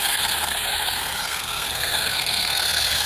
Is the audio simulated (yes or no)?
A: yes